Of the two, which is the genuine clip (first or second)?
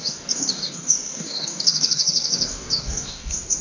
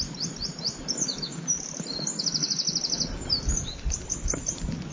second